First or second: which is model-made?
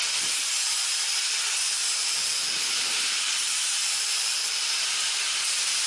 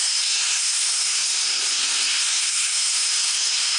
second